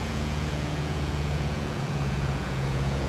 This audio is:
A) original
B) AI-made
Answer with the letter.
B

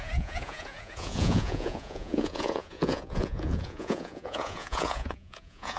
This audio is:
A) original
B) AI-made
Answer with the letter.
B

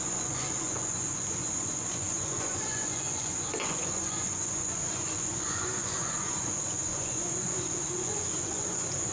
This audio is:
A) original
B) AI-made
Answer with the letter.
B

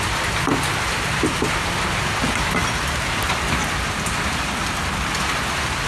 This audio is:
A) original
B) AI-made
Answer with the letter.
A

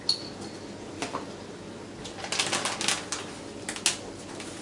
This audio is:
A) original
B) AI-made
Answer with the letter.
A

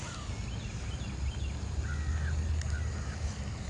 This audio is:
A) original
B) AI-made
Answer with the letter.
A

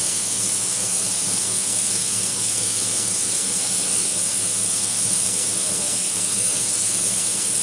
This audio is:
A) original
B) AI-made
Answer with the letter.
B